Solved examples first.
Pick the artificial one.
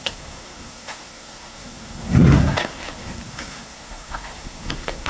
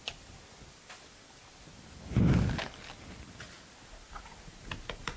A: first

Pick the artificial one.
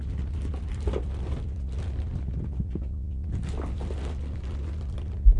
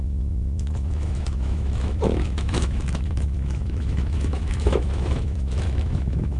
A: second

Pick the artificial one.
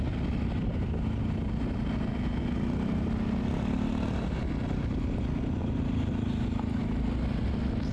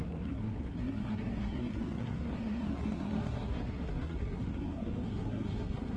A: second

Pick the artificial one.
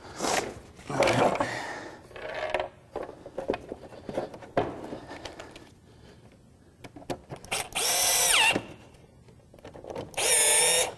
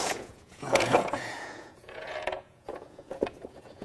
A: second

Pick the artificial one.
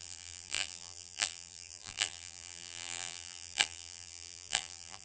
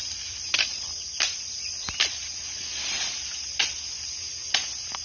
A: first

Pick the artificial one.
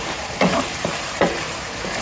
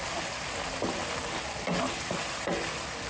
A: first